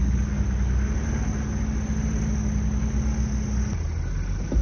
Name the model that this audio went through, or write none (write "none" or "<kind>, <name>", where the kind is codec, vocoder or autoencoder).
none